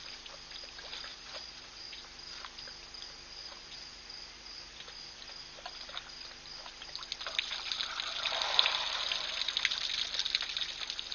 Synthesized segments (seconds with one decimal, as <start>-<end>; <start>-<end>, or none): 1.1-2.0; 3.4-5.2